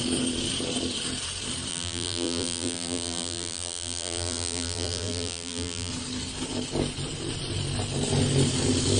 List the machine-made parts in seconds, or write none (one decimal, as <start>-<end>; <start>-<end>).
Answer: 1.7-5.9